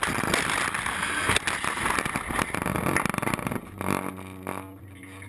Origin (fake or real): real